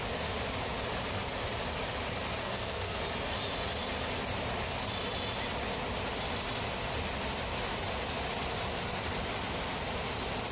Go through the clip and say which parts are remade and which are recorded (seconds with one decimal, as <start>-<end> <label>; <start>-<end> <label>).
0.0-2.4 recorded; 2.4-3.0 remade; 3.0-10.5 recorded